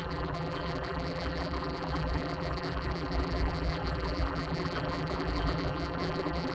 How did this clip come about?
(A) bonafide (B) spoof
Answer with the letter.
B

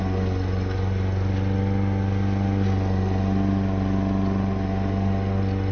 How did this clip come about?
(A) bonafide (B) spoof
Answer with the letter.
A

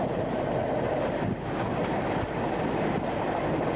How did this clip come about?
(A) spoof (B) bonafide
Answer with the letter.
B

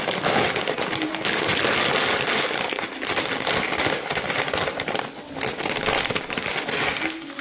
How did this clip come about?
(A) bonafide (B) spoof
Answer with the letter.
A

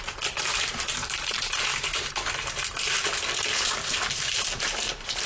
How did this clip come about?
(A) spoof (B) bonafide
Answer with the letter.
A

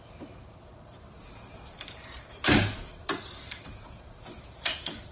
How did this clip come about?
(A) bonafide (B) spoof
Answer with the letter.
B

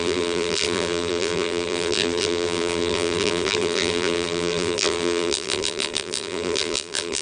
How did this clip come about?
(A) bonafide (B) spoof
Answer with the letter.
B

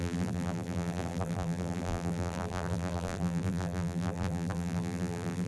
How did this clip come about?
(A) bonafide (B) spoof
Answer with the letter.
B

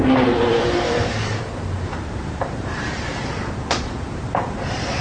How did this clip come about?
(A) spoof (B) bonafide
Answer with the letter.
A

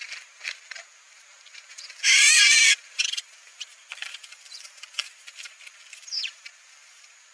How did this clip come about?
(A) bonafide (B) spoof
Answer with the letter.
B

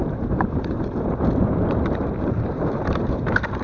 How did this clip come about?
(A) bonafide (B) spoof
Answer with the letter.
B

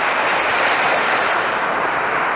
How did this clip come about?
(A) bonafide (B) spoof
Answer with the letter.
A